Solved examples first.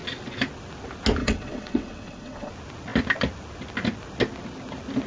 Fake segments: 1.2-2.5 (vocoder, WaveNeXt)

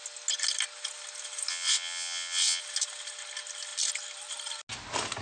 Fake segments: 1.5-2.6 (vocoder, WaveNeXt)

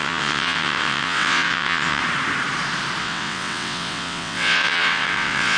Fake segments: 0.0-2.0 (vocoder, WaveNeXt); 3.0-5.6

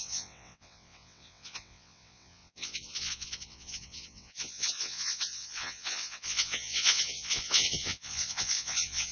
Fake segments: 0.0-9.1 (vocoder, WaveNeXt)

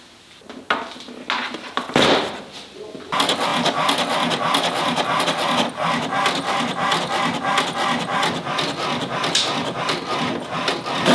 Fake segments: none

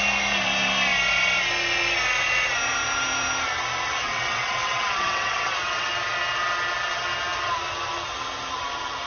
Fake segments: 4.0-5.9 (vocoder, WaveNeXt)